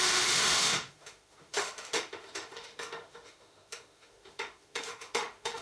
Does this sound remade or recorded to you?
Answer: remade